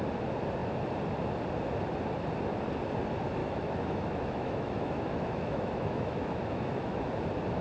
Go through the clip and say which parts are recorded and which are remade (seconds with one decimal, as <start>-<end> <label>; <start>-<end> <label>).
0.0-3.4 recorded; 3.4-7.1 remade; 7.1-7.6 recorded